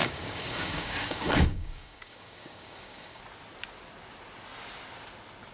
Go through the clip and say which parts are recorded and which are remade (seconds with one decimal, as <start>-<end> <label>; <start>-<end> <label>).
0.0-3.2 remade; 3.2-5.5 recorded